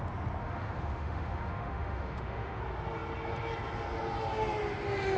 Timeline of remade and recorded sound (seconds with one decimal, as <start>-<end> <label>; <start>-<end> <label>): 0.0-0.4 recorded; 0.4-2.6 remade; 2.6-5.2 recorded